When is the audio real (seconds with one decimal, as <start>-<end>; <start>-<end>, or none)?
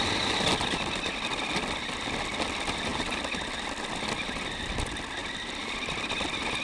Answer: 0.0-6.6